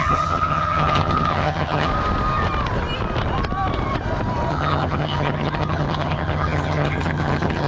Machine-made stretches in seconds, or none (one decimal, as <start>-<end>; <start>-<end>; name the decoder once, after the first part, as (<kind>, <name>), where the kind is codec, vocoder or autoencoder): 0.0-1.9 (vocoder, HiFi-GAN); 4.5-7.7